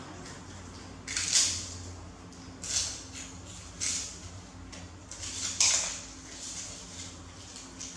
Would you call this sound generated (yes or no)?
no